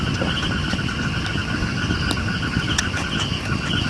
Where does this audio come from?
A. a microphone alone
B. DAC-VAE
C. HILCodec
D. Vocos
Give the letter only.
A